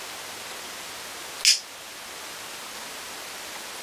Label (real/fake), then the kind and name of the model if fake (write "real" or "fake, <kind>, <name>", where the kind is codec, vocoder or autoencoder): real